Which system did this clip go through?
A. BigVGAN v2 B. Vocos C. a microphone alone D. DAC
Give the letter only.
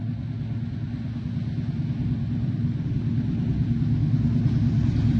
C